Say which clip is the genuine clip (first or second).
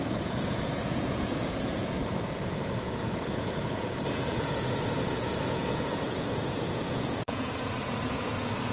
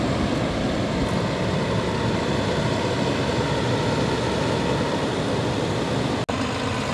second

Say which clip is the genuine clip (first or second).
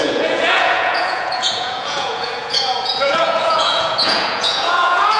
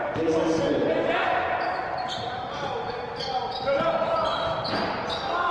second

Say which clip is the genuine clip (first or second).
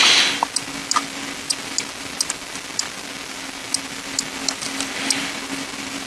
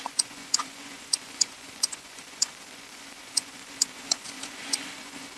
first